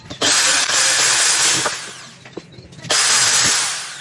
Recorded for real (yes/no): yes